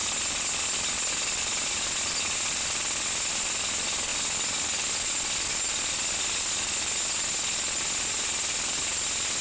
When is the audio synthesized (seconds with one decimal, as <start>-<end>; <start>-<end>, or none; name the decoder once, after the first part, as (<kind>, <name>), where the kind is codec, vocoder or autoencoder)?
none